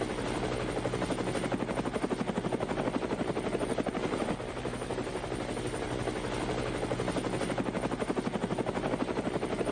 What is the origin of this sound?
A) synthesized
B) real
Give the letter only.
B